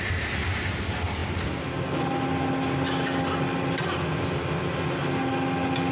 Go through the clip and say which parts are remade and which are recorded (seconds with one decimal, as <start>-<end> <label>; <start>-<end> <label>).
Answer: 0.0-5.9 recorded